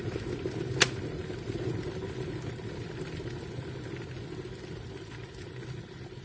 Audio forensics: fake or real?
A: real